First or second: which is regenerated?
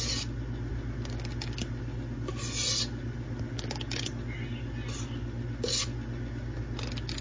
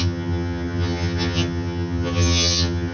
second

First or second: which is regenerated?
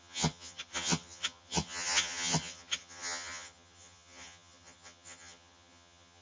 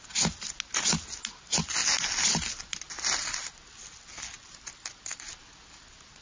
first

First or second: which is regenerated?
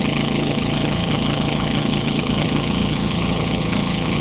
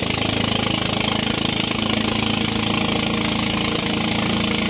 first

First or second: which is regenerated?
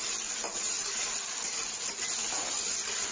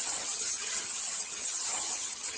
second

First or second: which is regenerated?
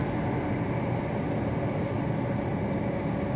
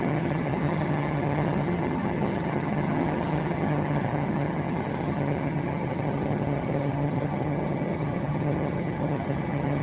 second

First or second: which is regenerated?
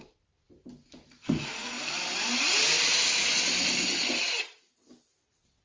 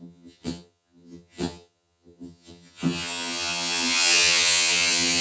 second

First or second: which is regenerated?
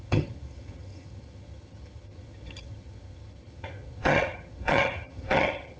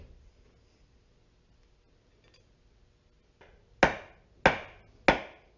first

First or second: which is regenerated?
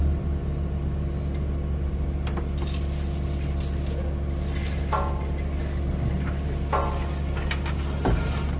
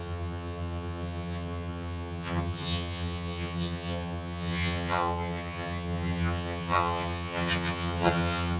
second